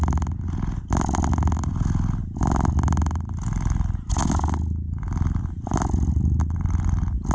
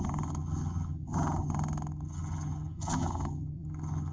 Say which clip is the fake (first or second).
second